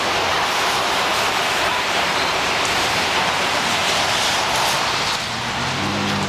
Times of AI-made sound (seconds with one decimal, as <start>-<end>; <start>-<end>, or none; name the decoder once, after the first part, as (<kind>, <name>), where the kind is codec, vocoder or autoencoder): 1.1-2.2 (vocoder, BigVGAN v2)